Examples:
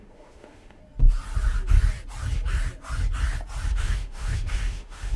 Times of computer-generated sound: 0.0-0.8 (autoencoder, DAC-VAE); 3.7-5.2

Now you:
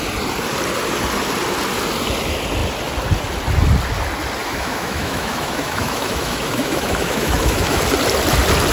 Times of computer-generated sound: 4.4-7.8 (autoencoder, DAC-VAE)